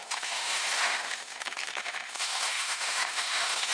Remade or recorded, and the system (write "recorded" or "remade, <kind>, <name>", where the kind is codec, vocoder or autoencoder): remade, autoencoder, DAC-VAE